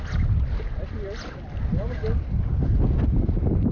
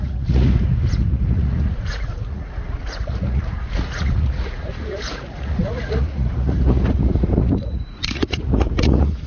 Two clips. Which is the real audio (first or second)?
first